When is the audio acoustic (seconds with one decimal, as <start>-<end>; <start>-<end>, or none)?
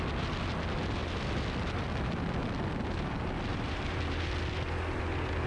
0.0-3.5; 4.0-5.5